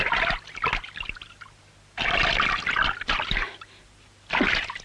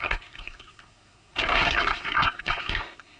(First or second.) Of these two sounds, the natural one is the first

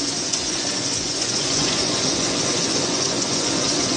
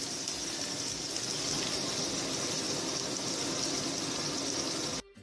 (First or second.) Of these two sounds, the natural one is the second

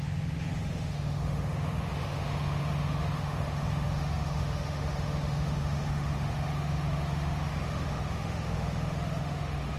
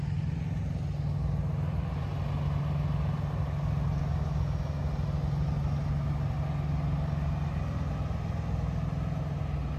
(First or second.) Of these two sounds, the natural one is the second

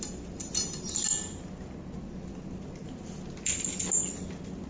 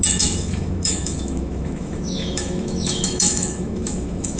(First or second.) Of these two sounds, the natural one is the first